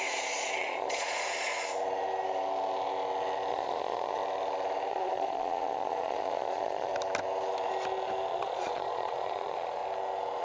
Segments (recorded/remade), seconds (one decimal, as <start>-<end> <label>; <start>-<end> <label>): 0.0-1.5 remade; 1.5-3.5 recorded; 3.5-4.2 remade; 4.2-4.9 recorded; 4.9-6.9 remade; 6.9-8.3 recorded; 8.3-9.8 remade; 9.8-10.4 recorded